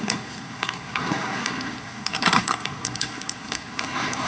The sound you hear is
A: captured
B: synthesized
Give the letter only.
B